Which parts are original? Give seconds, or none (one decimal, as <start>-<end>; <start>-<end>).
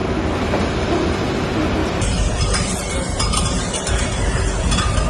0.0-1.8